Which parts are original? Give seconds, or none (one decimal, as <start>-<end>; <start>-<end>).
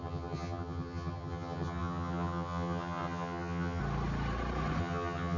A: 3.8-4.8